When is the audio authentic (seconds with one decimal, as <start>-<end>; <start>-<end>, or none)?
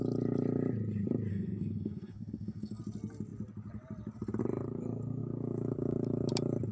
0.0-1.3; 2.8-6.7